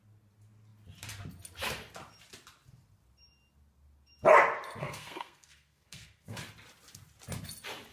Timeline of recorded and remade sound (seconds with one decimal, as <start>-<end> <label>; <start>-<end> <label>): 0.0-4.8 recorded; 4.8-6.4 remade; 6.4-7.9 recorded